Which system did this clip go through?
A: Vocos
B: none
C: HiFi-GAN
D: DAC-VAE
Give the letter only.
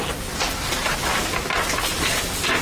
B